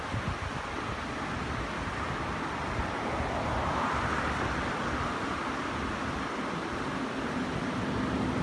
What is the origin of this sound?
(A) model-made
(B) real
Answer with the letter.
B